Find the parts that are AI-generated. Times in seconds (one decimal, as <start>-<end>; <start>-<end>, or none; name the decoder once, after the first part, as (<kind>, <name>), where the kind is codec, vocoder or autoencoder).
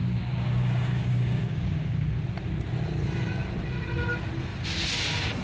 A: 0.0-2.1 (codec, DAC)